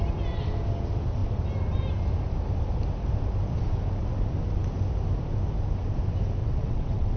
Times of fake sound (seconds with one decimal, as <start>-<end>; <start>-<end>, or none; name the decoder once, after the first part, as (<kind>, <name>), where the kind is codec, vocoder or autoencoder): 6.4-7.2 (vocoder, WaveNeXt)